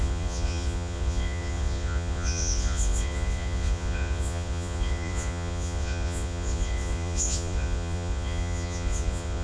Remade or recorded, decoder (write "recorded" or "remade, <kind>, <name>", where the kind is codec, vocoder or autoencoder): remade, vocoder, Vocos